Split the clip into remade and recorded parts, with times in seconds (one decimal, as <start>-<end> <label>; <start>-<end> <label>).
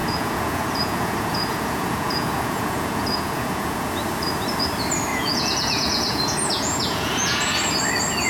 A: 0.0-3.9 remade; 3.9-5.1 recorded; 5.1-7.5 remade; 7.5-8.3 recorded